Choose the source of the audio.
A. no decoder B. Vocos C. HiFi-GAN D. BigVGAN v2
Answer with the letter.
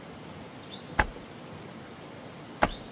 A